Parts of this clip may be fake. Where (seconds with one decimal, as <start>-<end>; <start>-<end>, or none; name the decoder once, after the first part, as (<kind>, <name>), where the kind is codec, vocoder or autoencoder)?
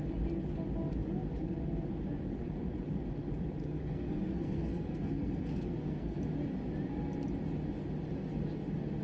3.6-6.2 (codec, SNAC)